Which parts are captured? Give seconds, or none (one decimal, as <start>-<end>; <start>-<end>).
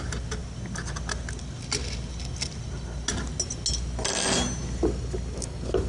0.0-5.9